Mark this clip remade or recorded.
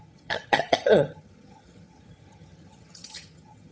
remade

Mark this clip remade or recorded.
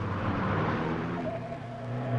remade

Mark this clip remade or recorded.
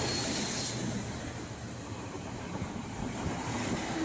remade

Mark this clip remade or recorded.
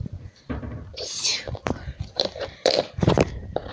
remade